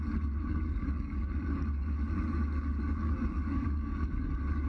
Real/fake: fake